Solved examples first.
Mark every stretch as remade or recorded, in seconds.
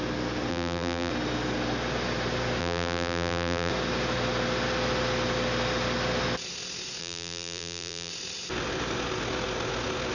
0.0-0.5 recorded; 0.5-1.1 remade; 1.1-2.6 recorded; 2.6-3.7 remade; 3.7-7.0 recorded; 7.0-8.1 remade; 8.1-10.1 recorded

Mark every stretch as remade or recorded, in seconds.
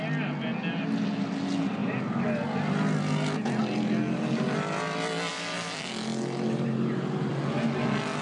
0.0-5.3 recorded; 5.3-7.3 remade; 7.3-8.2 recorded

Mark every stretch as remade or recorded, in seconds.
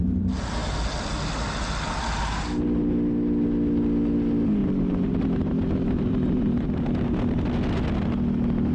0.0-4.6 recorded; 4.6-7.4 remade; 7.4-8.7 recorded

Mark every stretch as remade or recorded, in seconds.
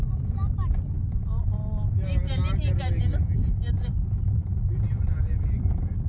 0.0-2.1 recorded; 2.1-6.1 remade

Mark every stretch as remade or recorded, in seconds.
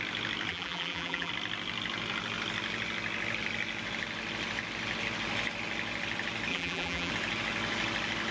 0.0-0.5 recorded; 0.5-1.3 remade; 1.3-6.5 recorded; 6.5-7.1 remade; 7.1-8.3 recorded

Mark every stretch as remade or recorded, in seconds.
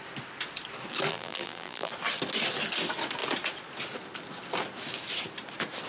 0.0-1.1 recorded; 1.1-1.9 remade; 1.9-5.9 recorded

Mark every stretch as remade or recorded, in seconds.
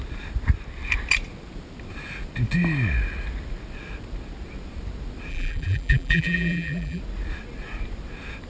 0.0-5.3 recorded; 5.3-7.0 remade; 7.0-8.5 recorded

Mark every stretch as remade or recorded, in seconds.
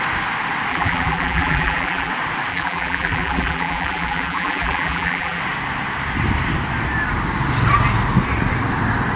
0.0-0.7 recorded; 0.7-2.1 remade; 2.1-2.5 recorded; 2.5-5.4 remade; 5.4-9.2 recorded